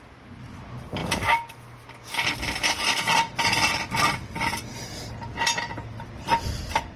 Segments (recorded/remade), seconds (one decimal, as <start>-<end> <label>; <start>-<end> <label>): 0.0-7.0 recorded